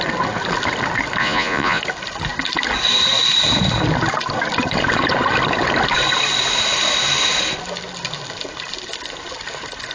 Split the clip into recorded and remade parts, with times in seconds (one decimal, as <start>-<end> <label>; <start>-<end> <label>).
0.0-1.2 recorded; 1.2-1.8 remade; 1.8-9.9 recorded